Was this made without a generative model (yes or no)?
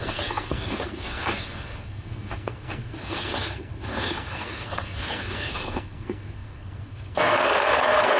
no